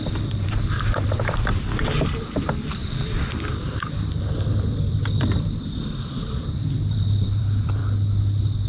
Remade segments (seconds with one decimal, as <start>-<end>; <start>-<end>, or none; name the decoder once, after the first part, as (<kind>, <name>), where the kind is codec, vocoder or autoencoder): 0.0-7.8 (vocoder, BigVGAN v2)